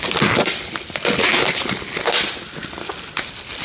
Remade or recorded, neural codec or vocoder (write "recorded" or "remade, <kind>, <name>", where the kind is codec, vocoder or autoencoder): recorded